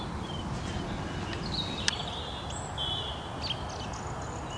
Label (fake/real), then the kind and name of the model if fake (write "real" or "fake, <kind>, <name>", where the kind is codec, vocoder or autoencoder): real